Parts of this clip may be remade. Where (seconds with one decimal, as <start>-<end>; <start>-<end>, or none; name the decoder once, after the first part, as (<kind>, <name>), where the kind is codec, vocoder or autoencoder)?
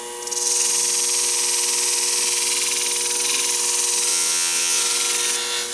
4.1-4.8 (vocoder, WaveNeXt)